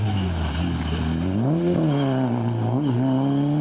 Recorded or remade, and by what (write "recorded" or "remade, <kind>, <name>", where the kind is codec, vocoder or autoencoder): recorded